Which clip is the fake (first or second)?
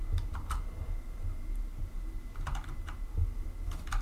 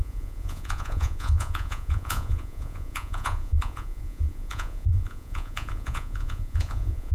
second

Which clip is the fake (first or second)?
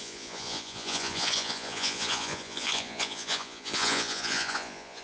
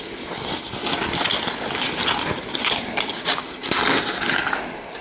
first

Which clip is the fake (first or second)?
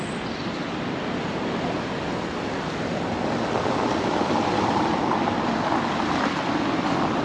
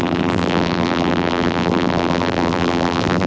second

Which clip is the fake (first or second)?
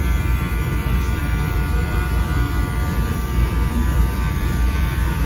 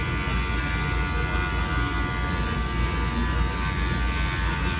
first